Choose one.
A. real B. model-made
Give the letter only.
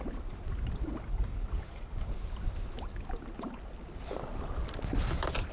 A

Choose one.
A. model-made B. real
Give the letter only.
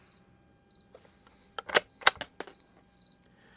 B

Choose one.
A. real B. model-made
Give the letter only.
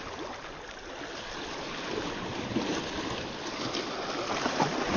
A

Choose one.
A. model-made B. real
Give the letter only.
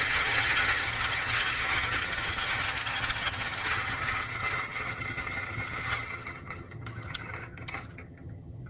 A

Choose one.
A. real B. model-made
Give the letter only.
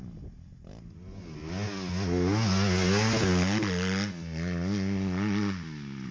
A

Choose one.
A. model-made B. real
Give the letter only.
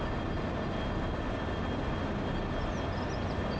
B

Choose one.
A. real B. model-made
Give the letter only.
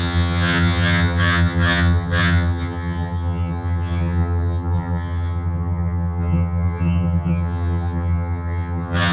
B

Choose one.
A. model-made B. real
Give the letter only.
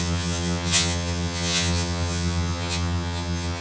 A